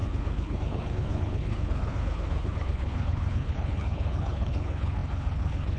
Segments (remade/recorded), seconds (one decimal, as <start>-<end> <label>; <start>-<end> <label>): 0.0-5.8 remade